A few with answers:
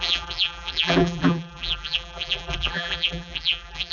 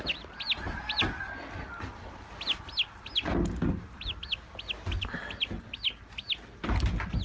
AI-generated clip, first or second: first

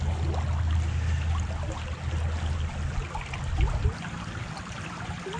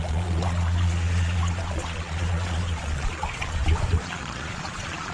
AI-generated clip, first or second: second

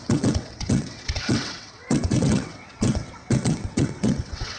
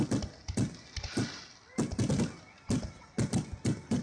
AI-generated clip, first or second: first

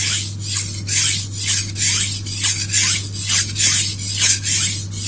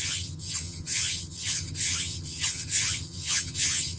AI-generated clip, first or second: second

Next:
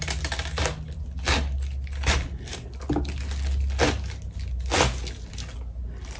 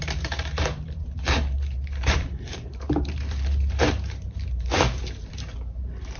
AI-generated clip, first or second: second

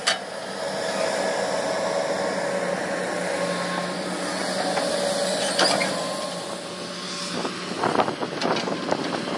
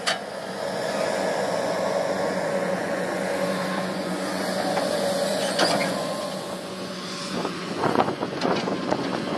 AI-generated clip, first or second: second